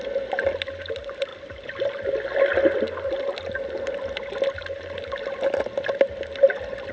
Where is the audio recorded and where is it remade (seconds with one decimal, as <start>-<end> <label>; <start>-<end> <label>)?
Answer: 0.0-6.9 recorded